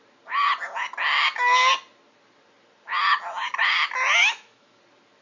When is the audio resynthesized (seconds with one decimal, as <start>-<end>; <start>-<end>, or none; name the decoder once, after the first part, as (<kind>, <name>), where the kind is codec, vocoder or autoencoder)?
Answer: 4.2-4.8 (autoencoder, DAC-VAE)